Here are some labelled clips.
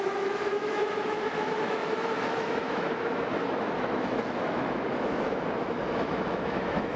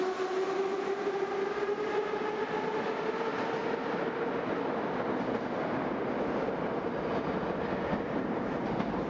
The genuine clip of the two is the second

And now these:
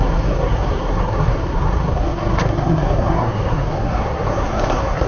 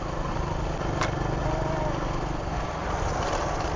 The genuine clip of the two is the second